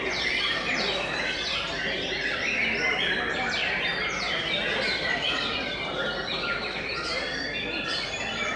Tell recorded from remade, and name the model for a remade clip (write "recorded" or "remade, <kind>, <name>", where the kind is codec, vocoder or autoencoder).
remade, vocoder, BigVGAN v2